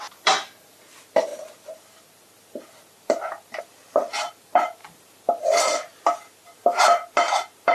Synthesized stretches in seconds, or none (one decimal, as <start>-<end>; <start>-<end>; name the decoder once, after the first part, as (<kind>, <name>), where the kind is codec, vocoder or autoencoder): 0.0-7.7 (vocoder, BigVGAN v2)